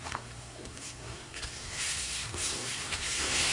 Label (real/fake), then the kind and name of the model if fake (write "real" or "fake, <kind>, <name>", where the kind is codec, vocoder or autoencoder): fake, codec, SNAC